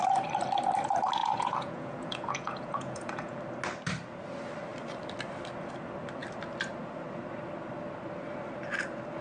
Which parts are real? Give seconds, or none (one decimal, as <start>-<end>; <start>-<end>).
0.0-1.2; 3.4-9.2